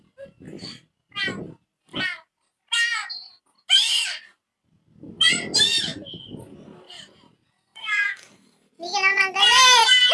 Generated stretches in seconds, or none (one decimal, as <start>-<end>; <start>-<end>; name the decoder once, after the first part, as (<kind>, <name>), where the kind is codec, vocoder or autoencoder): 7.8-8.7 (codec, SNAC)